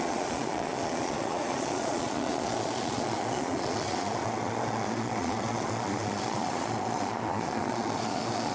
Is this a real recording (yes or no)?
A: no